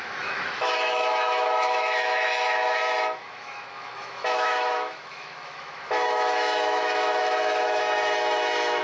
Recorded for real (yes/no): no